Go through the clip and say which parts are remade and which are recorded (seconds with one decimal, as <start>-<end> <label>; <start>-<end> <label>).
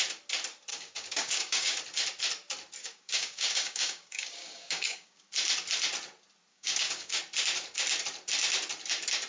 0.0-0.7 recorded; 0.7-1.8 remade; 1.8-2.8 recorded; 2.8-5.2 remade; 5.2-6.5 recorded; 6.5-7.2 remade; 7.2-9.3 recorded